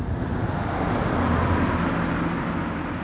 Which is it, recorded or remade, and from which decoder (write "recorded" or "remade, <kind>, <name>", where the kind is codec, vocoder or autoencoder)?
recorded